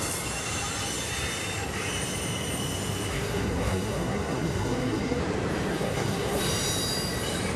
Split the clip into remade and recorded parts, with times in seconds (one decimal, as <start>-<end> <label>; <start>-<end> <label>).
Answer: 0.0-3.1 recorded; 3.1-5.2 remade; 5.2-5.7 recorded; 5.7-6.4 remade; 6.4-7.6 recorded